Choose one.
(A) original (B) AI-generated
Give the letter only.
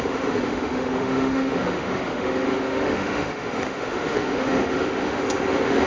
B